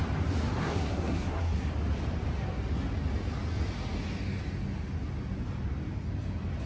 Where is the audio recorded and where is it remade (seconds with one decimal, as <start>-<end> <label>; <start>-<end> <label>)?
0.0-0.6 recorded; 0.6-1.7 remade; 1.7-6.7 recorded